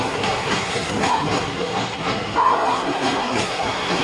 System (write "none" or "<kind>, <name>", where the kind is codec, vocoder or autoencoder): codec, SNAC